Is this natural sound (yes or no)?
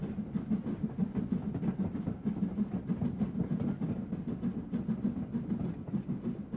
yes